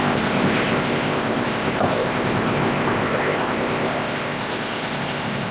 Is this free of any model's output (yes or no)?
no